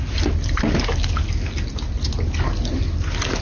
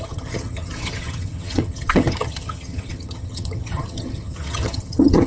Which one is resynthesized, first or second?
second